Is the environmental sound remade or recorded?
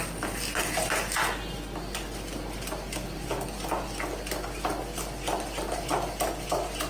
recorded